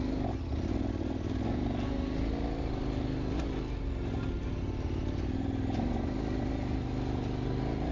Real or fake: real